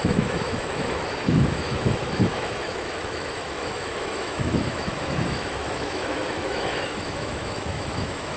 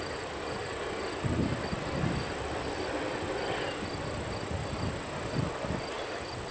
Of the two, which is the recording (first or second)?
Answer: second